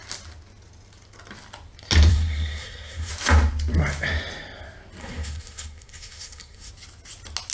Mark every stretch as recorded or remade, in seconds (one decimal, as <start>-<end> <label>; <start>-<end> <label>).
0.0-2.1 recorded; 2.1-3.1 remade; 3.1-5.0 recorded; 5.0-6.7 remade; 6.7-7.5 recorded